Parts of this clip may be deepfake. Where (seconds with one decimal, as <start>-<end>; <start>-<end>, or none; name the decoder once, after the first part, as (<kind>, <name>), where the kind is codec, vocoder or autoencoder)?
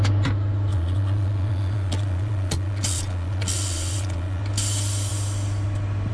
0.7-4.4 (vocoder, Vocos)